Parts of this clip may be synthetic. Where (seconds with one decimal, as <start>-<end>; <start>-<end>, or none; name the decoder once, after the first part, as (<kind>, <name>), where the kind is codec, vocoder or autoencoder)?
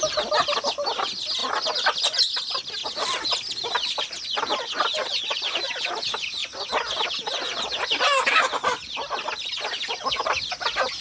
none